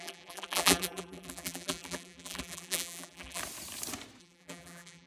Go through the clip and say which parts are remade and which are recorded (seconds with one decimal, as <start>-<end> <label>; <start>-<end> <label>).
0.0-3.4 remade; 3.4-4.2 recorded; 4.2-5.1 remade